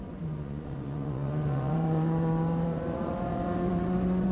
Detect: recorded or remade remade